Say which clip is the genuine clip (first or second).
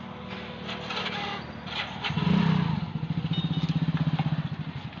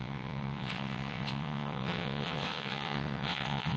first